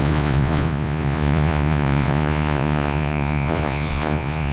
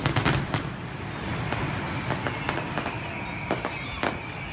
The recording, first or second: second